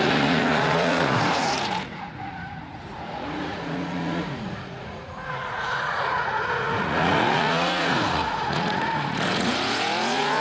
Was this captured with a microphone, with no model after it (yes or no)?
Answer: no